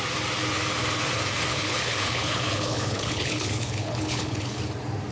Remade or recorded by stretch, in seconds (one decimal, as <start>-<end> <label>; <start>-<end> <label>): 0.0-1.5 recorded; 1.5-4.6 remade; 4.6-5.1 recorded